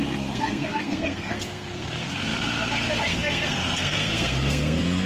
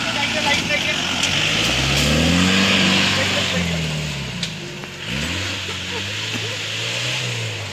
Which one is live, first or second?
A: second